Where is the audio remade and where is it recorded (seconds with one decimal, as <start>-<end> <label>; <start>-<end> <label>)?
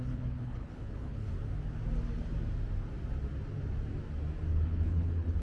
0.0-1.3 remade; 1.3-4.5 recorded; 4.5-5.4 remade